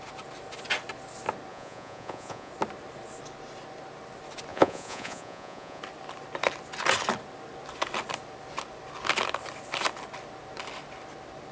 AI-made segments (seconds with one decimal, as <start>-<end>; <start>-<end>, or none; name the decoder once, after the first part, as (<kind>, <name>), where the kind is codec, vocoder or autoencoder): 1.5-2.5 (vocoder, Vocos); 4.5-5.8